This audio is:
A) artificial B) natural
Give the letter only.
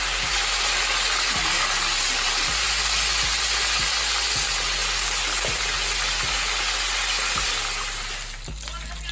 B